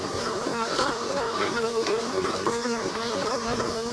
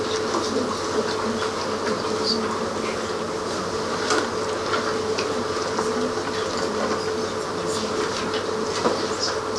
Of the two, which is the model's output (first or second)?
first